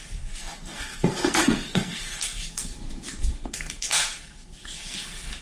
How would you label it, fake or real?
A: fake